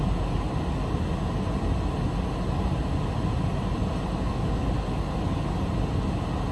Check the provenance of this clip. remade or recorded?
recorded